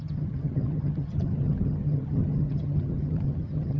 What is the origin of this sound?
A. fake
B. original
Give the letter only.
A